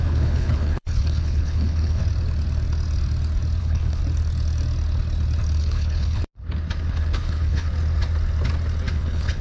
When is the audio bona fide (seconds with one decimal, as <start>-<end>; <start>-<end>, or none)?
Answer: 2.0-3.6; 4.0-5.6; 6.2-6.9; 7.7-8.9